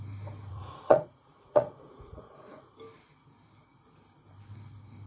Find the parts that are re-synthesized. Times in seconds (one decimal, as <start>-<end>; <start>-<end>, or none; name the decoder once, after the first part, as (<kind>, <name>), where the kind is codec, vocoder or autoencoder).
0.5-2.7 (vocoder, Vocos)